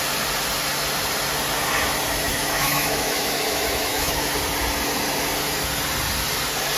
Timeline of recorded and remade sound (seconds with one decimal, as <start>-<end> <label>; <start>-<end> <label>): 0.0-2.3 recorded; 2.3-4.2 remade; 4.2-6.8 recorded